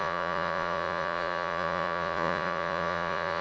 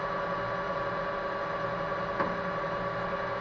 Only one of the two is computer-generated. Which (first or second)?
first